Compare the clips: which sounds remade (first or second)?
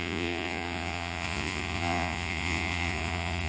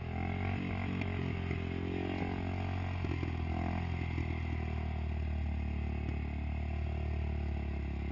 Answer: first